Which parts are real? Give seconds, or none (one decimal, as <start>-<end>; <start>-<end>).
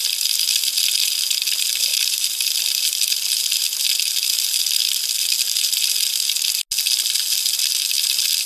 0.0-8.5